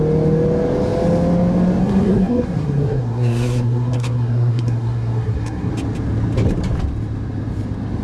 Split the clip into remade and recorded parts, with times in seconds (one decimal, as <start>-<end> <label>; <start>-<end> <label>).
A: 0.0-1.8 recorded; 1.8-5.7 remade; 5.7-8.0 recorded